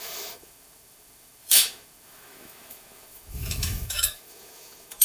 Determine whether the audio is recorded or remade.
remade